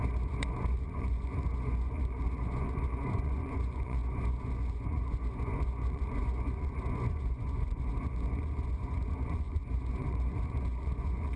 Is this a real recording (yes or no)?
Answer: no